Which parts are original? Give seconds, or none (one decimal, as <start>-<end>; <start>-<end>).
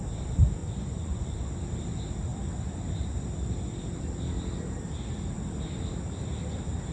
0.0-0.6; 1.5-6.9